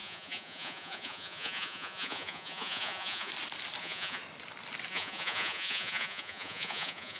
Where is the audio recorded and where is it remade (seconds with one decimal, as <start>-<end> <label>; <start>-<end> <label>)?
0.0-3.3 remade; 3.3-3.8 recorded; 3.8-4.2 remade; 4.2-4.9 recorded; 4.9-7.2 remade